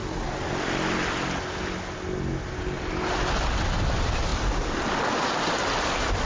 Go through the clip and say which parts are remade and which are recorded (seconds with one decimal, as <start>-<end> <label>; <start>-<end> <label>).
0.0-6.3 recorded